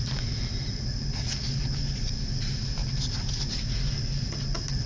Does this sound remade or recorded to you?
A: recorded